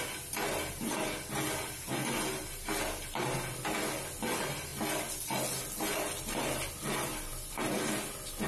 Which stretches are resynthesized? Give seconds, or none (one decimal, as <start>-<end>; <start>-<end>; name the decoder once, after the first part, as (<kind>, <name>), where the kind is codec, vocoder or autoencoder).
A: none